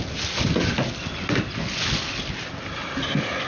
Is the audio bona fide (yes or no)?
yes